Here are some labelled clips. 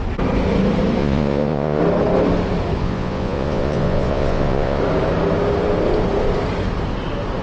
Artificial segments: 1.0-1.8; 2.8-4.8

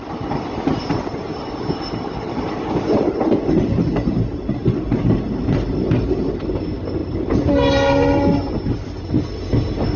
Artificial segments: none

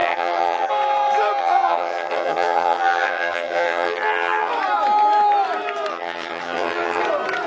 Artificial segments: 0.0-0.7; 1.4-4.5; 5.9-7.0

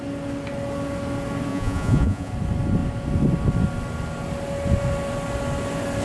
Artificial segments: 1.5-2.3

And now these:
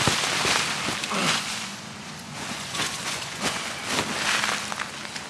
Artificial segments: 1.2-3.8